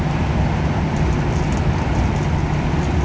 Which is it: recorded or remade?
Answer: recorded